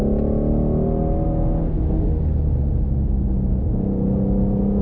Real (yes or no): yes